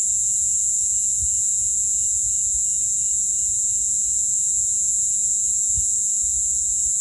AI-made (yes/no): no